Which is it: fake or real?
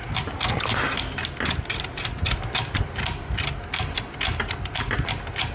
real